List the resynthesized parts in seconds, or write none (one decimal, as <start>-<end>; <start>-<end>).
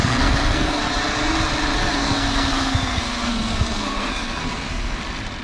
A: 0.0-0.9; 1.8-5.0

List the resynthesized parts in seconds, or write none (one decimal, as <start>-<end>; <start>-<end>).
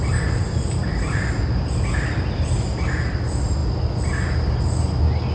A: 0.8-1.4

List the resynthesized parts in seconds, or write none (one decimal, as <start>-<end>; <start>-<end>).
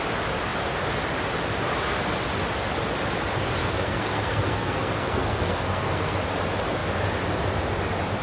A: 3.6-6.2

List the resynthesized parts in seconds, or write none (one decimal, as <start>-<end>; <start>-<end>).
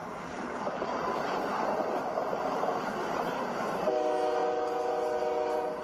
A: 0.0-3.5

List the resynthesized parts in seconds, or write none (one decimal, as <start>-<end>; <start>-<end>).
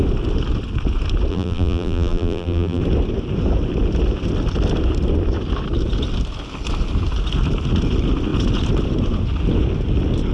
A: 1.3-2.8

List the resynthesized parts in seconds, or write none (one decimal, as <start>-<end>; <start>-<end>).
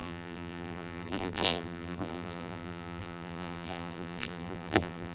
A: 0.0-5.1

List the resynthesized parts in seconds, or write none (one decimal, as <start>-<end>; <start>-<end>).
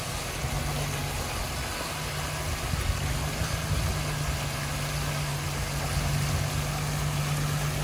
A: none